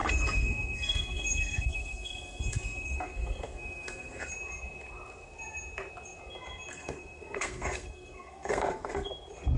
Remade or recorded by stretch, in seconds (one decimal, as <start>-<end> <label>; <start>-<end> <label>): 0.0-4.3 remade; 4.3-6.7 recorded; 6.7-9.1 remade; 9.1-9.6 recorded